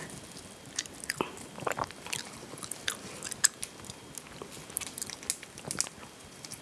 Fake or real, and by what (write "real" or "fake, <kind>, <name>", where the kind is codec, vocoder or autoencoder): real